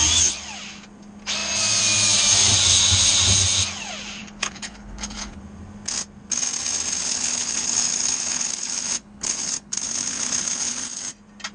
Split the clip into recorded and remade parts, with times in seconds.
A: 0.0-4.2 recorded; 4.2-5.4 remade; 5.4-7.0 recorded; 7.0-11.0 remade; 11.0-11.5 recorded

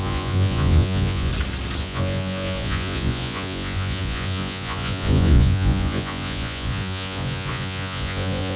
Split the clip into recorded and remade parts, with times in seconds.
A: 0.0-1.3 remade; 1.3-1.8 recorded; 1.8-8.6 remade

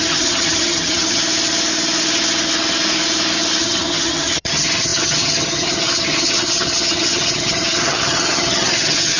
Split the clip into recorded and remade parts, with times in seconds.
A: 0.0-1.2 remade; 1.2-3.6 recorded; 3.6-9.2 remade

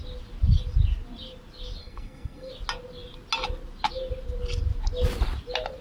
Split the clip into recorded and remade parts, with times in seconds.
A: 0.0-1.8 recorded; 1.8-2.5 remade; 2.5-5.8 recorded

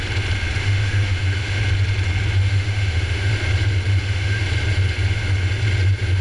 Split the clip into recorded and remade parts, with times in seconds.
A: 0.0-0.6 recorded; 0.6-1.6 remade; 1.6-2.4 recorded; 2.4-3.3 remade; 3.3-3.9 recorded; 3.9-4.4 remade; 4.4-6.2 recorded

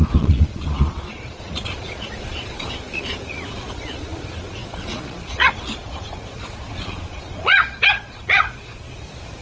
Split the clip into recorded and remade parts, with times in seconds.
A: 0.0-9.4 remade

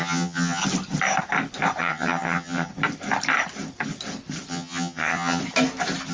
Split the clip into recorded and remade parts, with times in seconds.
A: 0.0-0.6 remade; 0.6-1.8 recorded; 1.8-2.7 remade; 2.7-4.5 recorded; 4.5-5.4 remade; 5.4-6.1 recorded

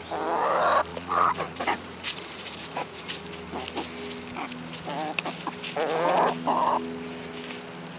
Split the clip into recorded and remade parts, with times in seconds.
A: 0.0-0.9 recorded; 0.9-3.2 remade; 3.2-8.0 recorded